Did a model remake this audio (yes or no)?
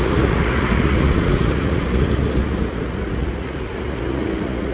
yes